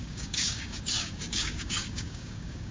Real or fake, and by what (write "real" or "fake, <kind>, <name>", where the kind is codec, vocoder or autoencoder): fake, codec, DAC